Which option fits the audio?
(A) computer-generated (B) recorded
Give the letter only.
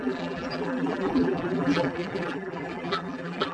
A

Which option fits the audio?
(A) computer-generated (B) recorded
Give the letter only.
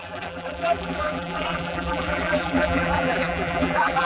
A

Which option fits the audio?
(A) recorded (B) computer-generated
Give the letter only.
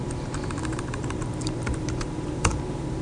B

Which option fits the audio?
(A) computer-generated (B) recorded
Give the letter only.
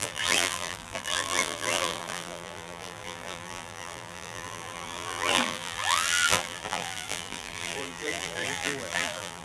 A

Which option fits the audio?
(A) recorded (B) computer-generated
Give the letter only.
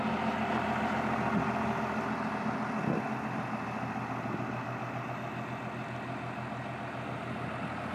A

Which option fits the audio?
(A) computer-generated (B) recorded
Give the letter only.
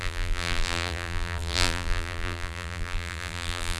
A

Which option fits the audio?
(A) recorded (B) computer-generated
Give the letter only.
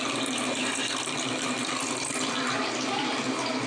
A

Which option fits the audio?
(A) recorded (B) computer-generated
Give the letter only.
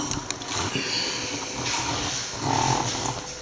A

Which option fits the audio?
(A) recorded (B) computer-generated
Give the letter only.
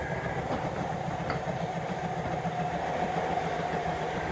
B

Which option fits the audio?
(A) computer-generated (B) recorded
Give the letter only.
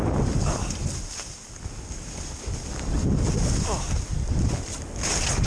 B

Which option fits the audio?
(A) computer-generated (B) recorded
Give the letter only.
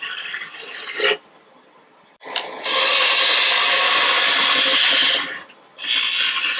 B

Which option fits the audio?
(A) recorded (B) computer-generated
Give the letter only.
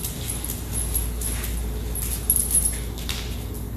A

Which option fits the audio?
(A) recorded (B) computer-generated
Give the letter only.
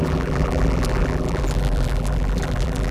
B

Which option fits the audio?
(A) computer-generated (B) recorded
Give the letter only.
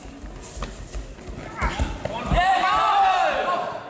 B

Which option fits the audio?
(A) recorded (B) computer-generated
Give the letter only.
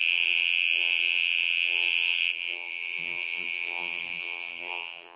B